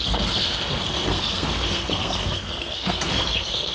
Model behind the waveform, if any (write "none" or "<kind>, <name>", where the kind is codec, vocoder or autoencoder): codec, SNAC